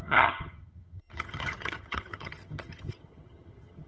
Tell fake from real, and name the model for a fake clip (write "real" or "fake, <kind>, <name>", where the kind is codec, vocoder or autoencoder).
fake, vocoder, HiFi-GAN